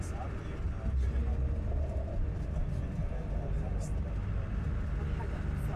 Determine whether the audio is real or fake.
real